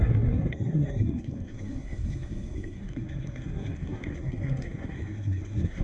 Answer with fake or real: fake